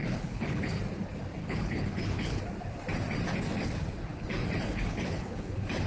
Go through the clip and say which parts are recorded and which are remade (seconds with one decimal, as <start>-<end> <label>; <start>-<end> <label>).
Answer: 0.0-0.8 remade; 0.8-1.4 recorded; 1.4-2.4 remade; 2.4-4.1 recorded; 4.1-5.9 remade